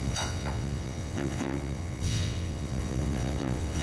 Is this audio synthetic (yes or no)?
yes